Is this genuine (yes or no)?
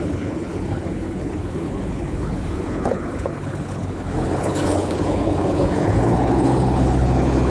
no